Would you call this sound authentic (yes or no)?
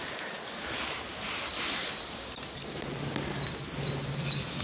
yes